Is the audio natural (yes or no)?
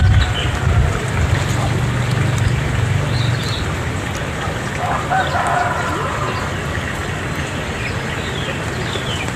yes